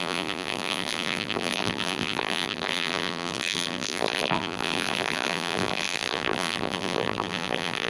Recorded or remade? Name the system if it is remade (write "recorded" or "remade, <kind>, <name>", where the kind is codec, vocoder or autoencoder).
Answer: remade, vocoder, BigVGAN v2